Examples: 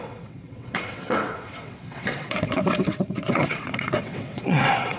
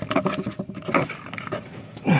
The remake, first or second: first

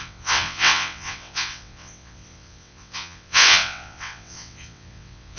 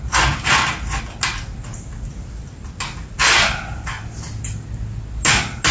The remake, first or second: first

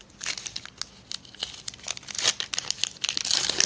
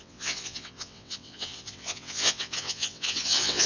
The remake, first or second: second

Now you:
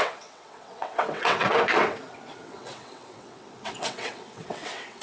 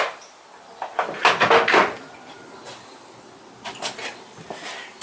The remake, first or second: first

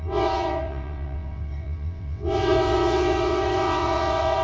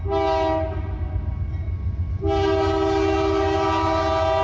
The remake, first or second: first